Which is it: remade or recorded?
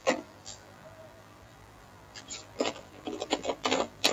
remade